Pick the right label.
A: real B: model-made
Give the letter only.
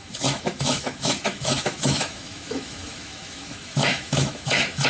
B